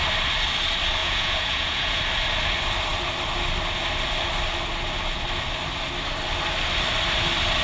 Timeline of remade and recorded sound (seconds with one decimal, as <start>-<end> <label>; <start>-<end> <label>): 0.0-1.0 recorded; 1.0-2.0 remade; 2.0-7.6 recorded